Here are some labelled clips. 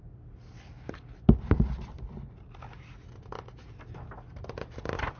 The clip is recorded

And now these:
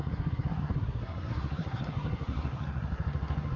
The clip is remade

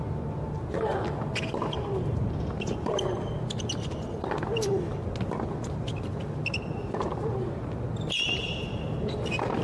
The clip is recorded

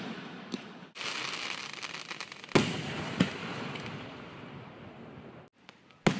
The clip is recorded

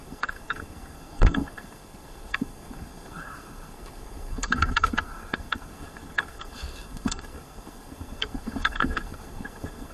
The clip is remade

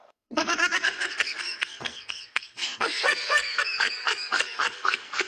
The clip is remade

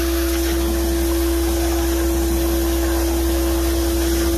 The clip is recorded